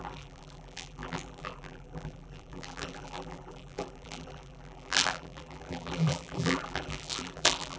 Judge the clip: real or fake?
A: fake